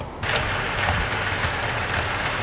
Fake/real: real